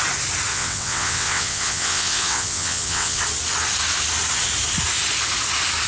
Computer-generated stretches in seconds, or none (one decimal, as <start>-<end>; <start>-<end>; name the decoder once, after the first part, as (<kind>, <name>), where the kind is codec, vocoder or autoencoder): 0.5-3.2 (vocoder, WaveNeXt)